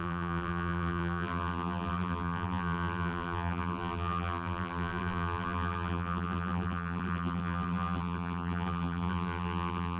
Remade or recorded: remade